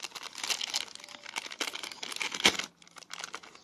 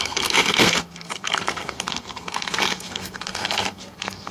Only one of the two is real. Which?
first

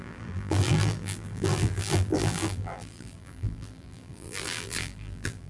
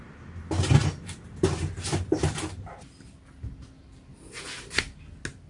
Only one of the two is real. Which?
second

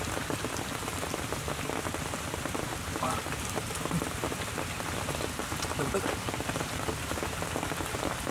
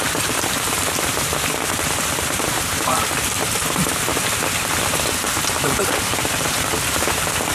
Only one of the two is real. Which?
first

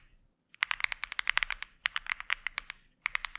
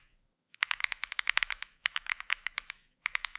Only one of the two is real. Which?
first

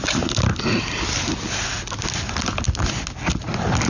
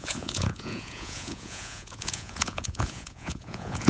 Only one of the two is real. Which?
first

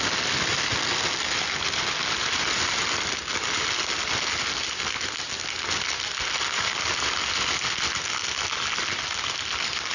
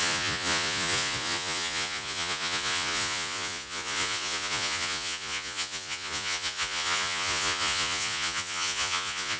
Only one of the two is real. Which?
first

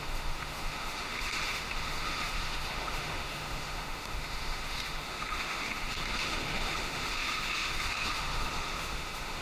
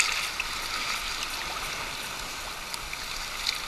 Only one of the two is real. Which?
second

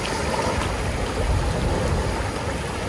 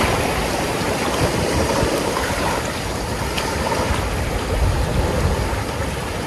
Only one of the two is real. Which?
first